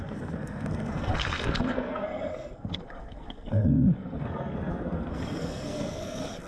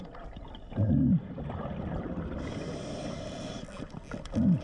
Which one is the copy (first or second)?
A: first